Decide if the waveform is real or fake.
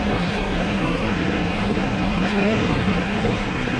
fake